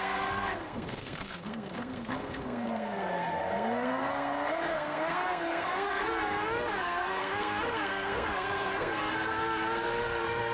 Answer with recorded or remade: remade